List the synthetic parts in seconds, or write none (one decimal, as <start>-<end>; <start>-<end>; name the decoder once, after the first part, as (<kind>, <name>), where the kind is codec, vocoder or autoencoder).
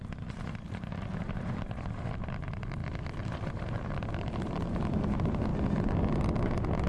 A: 0.0-2.8 (vocoder, BigVGAN v2); 3.5-5.5